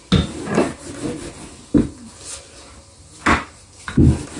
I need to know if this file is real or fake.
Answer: real